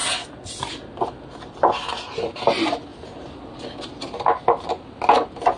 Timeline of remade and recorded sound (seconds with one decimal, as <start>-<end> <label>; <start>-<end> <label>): 0.0-5.6 recorded